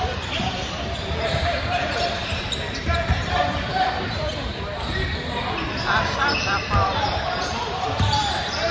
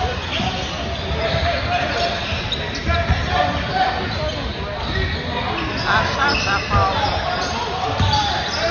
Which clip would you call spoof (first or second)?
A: first